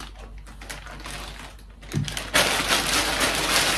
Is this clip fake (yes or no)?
no